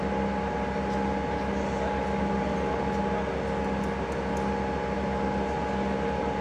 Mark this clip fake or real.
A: real